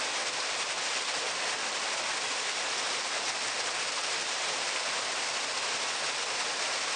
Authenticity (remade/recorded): recorded